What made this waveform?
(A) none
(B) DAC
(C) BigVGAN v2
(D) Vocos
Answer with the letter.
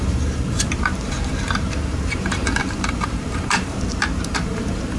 C